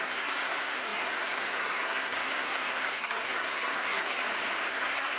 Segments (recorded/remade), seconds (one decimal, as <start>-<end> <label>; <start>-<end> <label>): 0.0-4.2 remade; 4.2-4.7 recorded; 4.7-5.2 remade